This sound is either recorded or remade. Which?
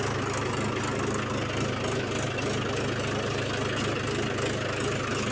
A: recorded